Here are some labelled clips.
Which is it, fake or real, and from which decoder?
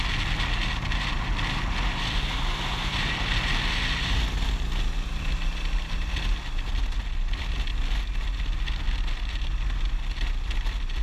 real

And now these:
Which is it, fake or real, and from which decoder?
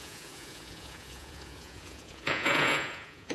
fake, vocoder, Vocos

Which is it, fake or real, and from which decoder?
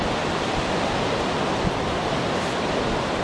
real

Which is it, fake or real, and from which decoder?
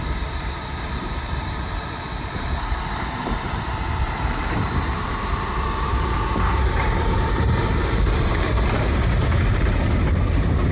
fake, vocoder, BigVGAN v2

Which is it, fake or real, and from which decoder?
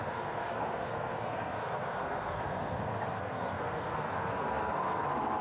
fake, codec, SNAC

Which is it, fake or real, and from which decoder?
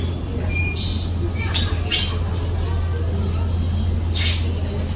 real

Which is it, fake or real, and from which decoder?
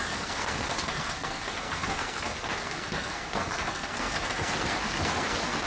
fake, codec, SNAC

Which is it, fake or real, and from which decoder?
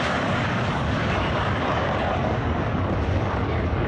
fake, codec, DAC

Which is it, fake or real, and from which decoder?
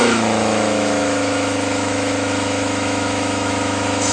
fake, autoencoder, DAC-VAE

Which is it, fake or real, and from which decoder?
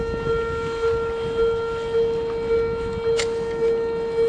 real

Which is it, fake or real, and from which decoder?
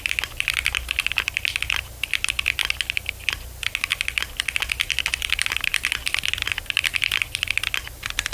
real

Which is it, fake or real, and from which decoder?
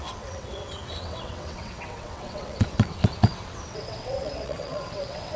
fake, vocoder, WaveNeXt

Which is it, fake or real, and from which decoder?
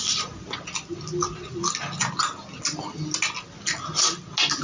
real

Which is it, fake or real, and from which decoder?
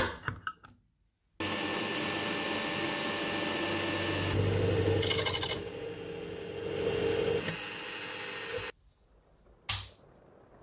real